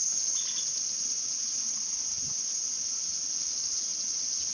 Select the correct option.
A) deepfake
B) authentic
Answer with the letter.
B